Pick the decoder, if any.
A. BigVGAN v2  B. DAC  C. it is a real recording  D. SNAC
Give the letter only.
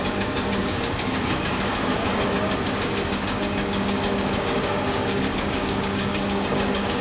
B